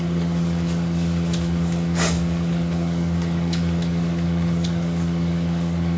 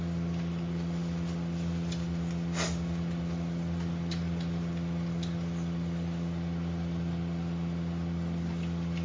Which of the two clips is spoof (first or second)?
first